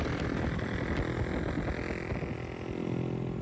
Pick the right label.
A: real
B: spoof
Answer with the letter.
A